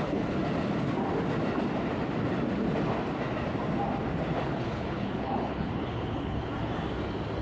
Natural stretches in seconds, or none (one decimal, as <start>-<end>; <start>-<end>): 0.4-4.4; 6.5-7.4